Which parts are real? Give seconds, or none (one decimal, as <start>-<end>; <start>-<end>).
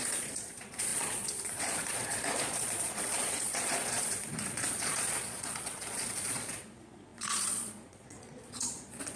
none